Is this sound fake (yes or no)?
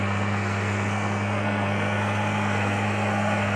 yes